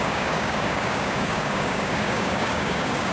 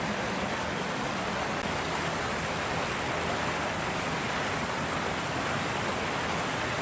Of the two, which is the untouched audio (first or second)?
second